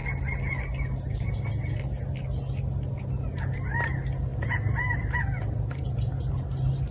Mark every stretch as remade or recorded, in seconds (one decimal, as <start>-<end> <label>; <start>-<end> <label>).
0.0-6.9 recorded